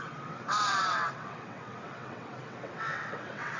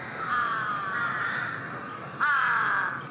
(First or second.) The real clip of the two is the second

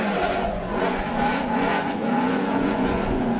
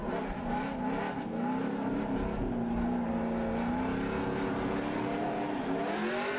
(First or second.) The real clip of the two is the second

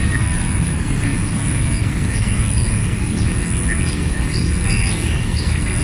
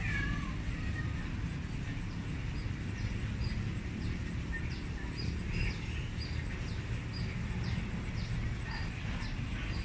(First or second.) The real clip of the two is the second